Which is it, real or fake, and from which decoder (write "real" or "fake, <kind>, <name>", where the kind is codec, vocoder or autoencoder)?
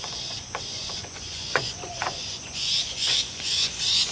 fake, vocoder, Vocos